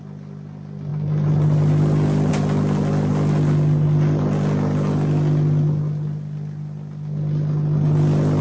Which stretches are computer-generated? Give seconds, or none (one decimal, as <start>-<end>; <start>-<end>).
none